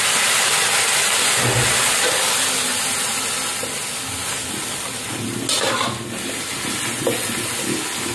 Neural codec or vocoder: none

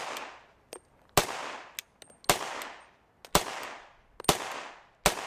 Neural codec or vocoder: none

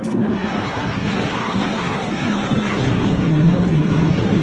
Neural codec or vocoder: codec, SNAC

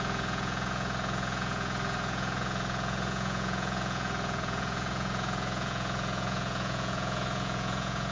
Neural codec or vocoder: vocoder, Vocos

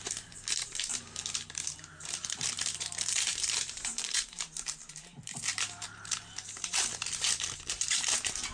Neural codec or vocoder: vocoder, BigVGAN v2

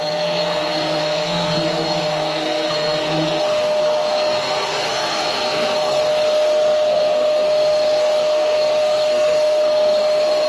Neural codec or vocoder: codec, SNAC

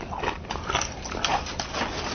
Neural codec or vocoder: none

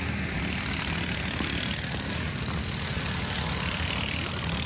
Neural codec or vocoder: none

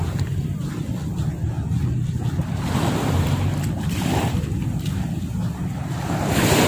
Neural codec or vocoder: none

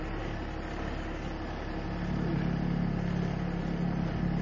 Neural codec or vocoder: none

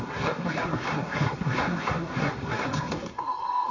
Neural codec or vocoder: codec, SNAC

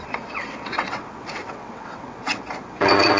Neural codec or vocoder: vocoder, WaveNeXt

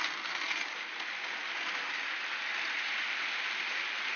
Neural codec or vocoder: none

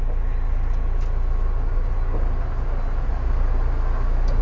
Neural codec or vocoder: none